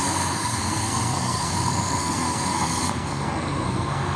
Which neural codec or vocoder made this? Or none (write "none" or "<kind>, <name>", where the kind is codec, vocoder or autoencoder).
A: codec, SNAC